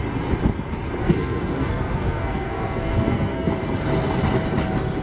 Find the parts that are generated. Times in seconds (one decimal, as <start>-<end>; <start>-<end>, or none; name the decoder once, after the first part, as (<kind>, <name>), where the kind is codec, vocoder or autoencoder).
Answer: 1.0-3.5 (codec, SNAC)

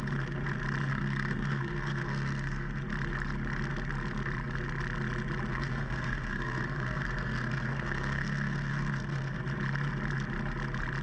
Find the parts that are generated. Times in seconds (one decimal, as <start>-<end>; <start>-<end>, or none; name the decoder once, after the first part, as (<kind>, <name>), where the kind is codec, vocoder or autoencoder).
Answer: 0.9-2.8 (codec, SNAC); 5.5-9.4

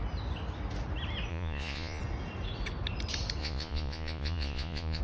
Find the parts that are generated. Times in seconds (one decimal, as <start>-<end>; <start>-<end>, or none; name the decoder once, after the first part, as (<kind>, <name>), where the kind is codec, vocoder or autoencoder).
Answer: 1.3-2.0 (vocoder, Vocos); 3.4-5.0

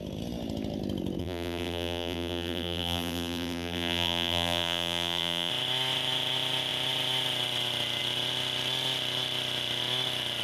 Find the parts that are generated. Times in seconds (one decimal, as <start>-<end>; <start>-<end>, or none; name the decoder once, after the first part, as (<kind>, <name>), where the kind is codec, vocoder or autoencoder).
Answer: 1.2-5.5 (vocoder, BigVGAN v2)

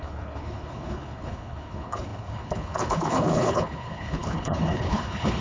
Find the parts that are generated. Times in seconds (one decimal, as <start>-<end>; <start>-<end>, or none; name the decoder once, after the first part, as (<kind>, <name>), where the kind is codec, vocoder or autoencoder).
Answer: 0.0-5.4 (codec, HILCodec)

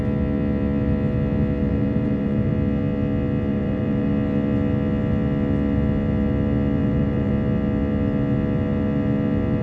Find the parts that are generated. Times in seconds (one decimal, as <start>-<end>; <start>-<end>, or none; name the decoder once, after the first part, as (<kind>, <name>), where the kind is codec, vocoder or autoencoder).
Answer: 1.6-2.5 (vocoder, BigVGAN v2); 3.5-4.1; 6.8-7.3